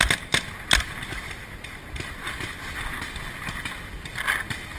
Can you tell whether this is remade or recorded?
recorded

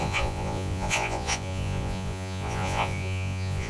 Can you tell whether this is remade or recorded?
remade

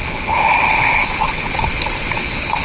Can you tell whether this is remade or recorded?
remade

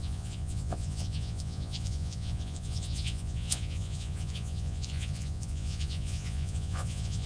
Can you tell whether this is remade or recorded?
remade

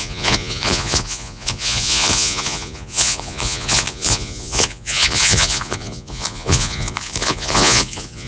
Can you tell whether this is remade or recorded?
remade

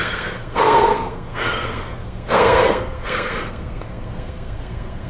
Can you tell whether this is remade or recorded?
remade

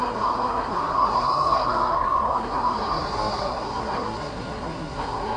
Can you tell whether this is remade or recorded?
remade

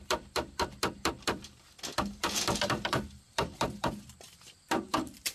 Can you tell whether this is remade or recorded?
remade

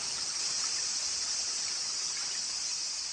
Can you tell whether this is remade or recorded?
remade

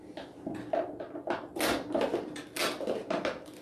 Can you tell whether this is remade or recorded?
recorded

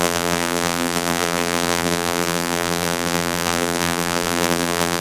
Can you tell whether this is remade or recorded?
remade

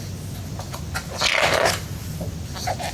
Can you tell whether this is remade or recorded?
recorded